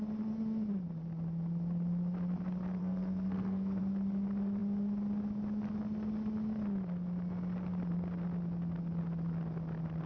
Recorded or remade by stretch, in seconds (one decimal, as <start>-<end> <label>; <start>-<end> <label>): 0.0-2.8 recorded; 2.8-3.8 remade; 3.8-10.1 recorded